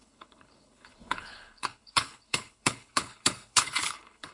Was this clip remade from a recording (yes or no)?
yes